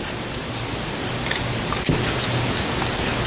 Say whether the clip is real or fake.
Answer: real